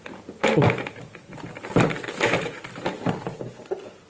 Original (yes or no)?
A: yes